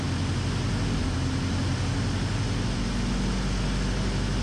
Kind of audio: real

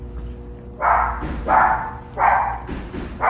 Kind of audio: real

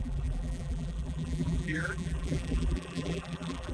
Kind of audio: fake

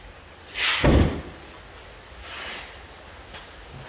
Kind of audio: real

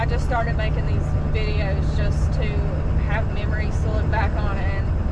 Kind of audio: real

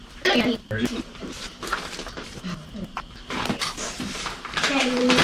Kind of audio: fake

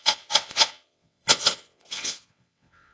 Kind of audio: fake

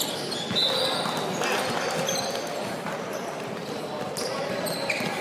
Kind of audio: real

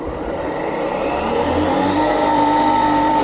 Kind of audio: fake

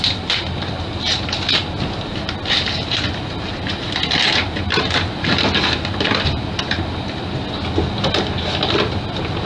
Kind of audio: real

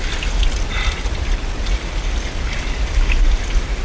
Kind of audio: real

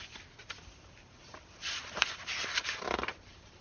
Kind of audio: fake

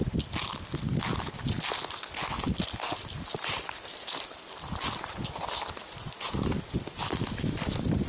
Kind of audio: real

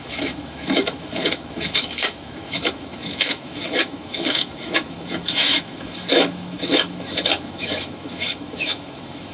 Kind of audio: fake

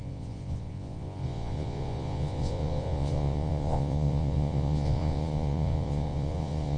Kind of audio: fake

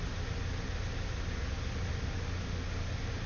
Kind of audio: real